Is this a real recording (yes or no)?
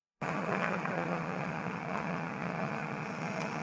no